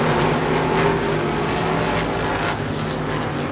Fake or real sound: real